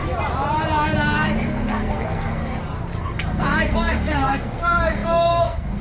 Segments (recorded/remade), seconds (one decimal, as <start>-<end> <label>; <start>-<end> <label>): 0.0-1.4 recorded; 1.4-2.4 remade; 2.4-3.0 recorded; 3.0-5.8 remade